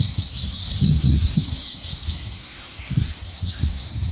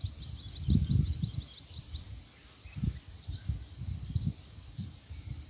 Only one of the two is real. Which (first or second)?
second